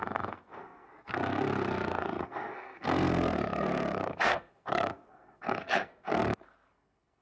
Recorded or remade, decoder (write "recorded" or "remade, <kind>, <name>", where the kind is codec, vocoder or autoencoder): remade, codec, SNAC